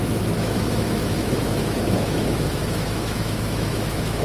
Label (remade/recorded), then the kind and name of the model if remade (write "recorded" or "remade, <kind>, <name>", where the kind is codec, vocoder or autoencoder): remade, autoencoder, DAC-VAE